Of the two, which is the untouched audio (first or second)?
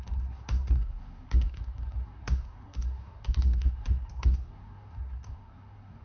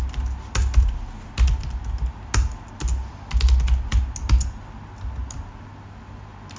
second